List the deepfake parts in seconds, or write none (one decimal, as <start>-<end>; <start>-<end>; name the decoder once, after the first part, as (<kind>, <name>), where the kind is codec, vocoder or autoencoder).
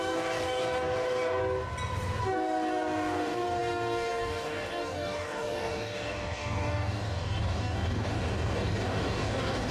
0.0-1.4 (codec, DAC); 2.2-9.7